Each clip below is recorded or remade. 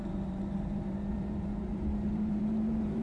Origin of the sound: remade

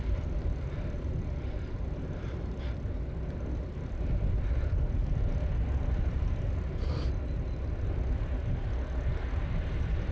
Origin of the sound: recorded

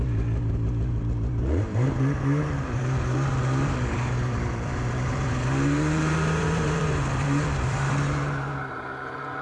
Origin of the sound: remade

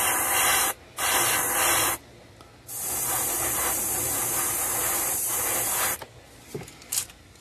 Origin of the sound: recorded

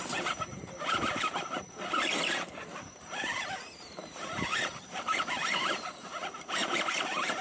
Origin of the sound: remade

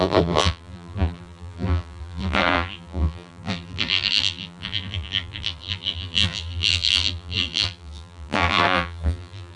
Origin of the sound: remade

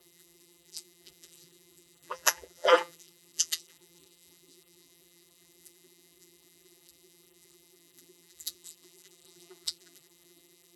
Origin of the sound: remade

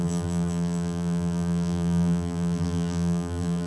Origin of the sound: remade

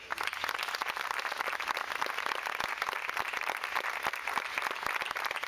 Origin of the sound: recorded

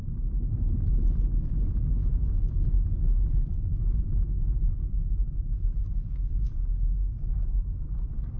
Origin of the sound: remade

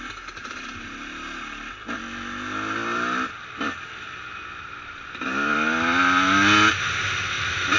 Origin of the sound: recorded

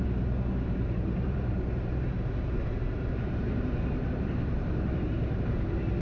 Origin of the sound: remade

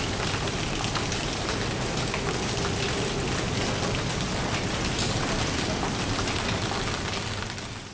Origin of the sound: recorded